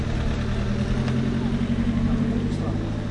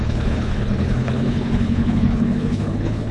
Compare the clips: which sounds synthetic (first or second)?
second